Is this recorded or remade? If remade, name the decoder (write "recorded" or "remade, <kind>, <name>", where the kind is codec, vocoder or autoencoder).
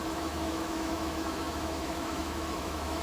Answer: remade, autoencoder, DAC-VAE